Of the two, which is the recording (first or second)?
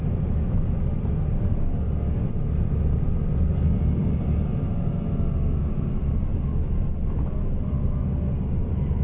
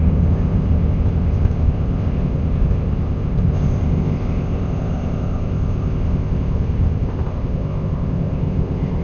first